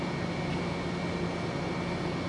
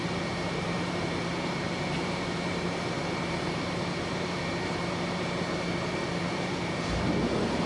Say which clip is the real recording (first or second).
first